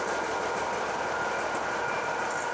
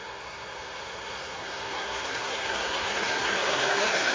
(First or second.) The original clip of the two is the first